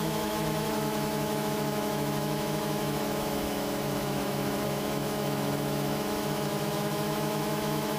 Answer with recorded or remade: remade